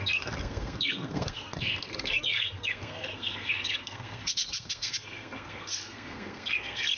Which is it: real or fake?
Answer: fake